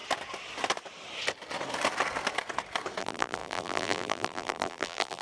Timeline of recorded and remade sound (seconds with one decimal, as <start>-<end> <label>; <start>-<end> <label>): 0.0-3.0 recorded; 3.0-5.2 remade

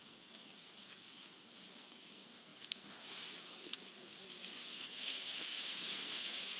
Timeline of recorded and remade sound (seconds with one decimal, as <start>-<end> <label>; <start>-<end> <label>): 0.0-6.6 remade